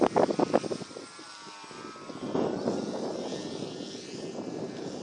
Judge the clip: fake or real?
real